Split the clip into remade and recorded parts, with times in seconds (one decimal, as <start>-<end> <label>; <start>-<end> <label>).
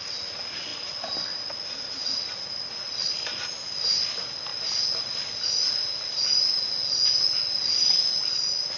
0.0-8.8 recorded